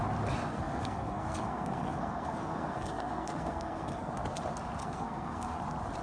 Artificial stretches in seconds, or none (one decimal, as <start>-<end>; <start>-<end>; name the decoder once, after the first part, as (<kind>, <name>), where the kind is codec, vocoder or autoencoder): 0.5-4.1 (codec, SNAC); 4.8-5.6

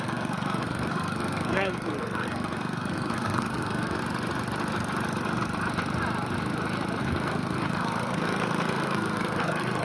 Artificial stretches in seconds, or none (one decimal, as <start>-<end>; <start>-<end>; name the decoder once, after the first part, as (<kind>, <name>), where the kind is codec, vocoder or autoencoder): 0.0-4.0 (codec, SNAC); 7.0-9.8